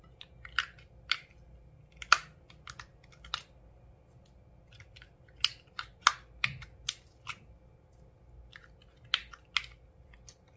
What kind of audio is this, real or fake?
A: real